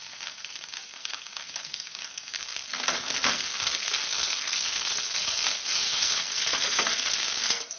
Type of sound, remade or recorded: remade